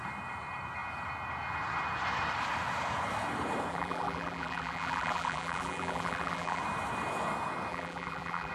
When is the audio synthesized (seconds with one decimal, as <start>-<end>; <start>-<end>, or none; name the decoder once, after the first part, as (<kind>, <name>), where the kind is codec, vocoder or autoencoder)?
3.7-6.6 (vocoder, BigVGAN v2); 7.7-8.5